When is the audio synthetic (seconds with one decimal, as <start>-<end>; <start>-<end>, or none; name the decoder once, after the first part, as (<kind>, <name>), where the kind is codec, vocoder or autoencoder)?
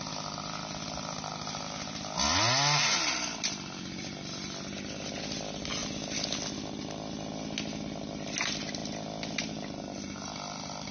none